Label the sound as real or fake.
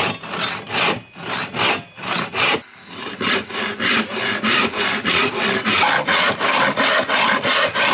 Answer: real